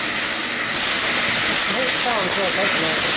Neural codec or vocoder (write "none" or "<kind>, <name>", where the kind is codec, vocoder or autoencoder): none